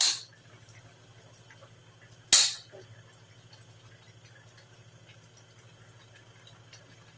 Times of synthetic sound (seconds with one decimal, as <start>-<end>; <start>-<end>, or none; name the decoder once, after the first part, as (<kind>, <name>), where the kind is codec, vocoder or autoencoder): none